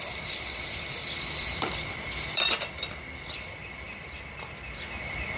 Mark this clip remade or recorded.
remade